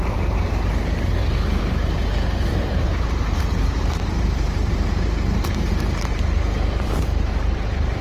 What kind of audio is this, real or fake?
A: fake